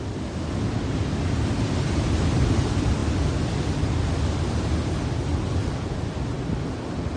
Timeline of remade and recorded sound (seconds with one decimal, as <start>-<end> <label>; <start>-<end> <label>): 0.0-7.2 recorded